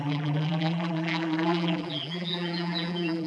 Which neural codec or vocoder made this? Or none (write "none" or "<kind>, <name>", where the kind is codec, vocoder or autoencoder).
vocoder, BigVGAN v2